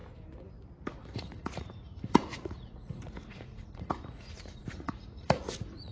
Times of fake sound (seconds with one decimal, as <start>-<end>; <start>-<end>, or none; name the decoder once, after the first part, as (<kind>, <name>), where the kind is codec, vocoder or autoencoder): 1.0-5.9 (vocoder, Vocos)